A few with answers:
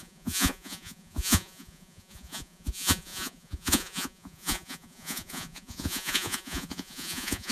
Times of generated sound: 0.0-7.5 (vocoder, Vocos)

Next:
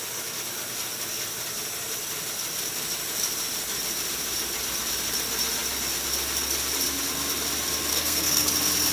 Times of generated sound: 7.9-8.5 (codec, SNAC)

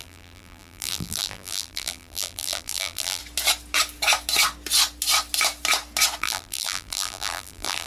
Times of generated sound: 0.0-3.2 (vocoder, BigVGAN v2); 6.2-7.9

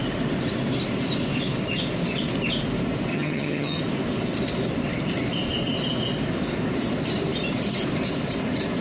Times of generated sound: 3.1-3.8 (vocoder, HiFi-GAN)

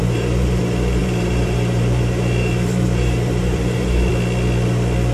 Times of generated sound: 0.0-0.6 (vocoder, BigVGAN v2); 1.0-4.1